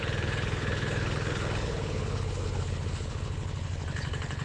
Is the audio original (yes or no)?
no